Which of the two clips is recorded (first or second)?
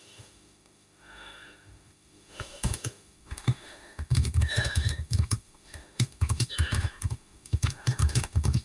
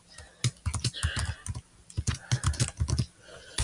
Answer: second